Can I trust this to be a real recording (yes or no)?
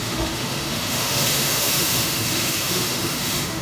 no